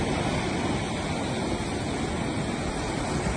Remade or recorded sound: recorded